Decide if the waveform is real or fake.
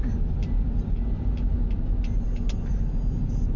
real